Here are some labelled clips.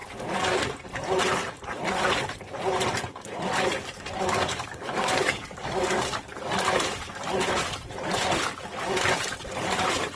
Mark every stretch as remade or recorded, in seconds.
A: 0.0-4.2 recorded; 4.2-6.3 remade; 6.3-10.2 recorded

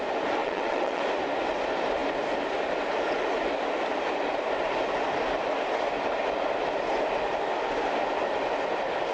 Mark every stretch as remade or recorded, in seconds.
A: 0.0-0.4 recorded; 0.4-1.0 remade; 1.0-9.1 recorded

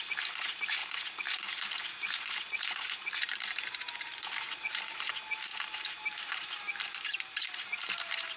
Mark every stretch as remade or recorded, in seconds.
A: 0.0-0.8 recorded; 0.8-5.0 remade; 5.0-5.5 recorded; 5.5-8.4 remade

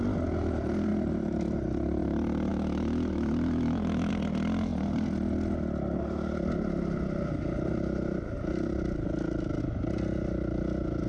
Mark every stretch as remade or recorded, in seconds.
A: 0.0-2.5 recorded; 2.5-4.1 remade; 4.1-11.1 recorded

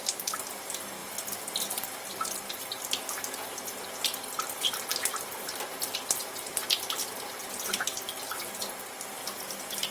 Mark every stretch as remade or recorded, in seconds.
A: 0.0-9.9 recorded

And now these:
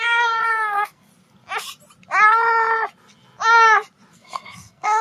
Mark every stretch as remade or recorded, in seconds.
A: 0.0-1.1 remade; 1.1-4.1 recorded; 4.1-5.0 remade

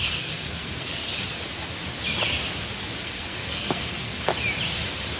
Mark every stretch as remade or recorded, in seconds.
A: 0.0-1.1 remade; 1.1-3.0 recorded; 3.0-4.3 remade; 4.3-5.2 recorded